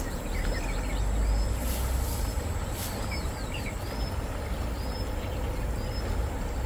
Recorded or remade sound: recorded